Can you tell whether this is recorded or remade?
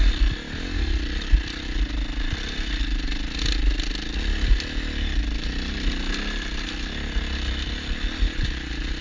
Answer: recorded